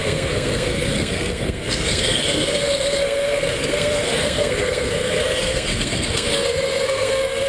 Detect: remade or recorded remade